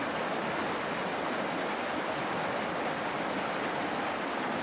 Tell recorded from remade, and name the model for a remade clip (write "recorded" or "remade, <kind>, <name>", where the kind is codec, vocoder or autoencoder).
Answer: recorded